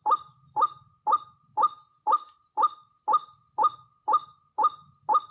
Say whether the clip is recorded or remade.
recorded